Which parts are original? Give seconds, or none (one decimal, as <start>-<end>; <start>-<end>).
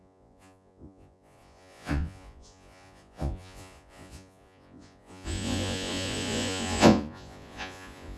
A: none